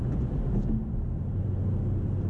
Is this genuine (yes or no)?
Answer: yes